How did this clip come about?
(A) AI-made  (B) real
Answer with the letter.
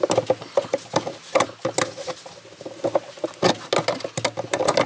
B